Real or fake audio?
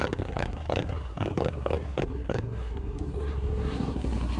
fake